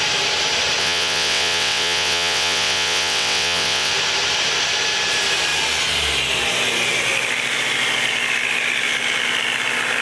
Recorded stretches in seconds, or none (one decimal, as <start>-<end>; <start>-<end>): 0.0-0.8; 3.9-10.0